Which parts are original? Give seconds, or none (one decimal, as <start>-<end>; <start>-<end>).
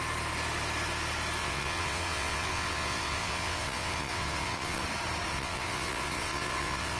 0.0-1.4; 4.8-5.3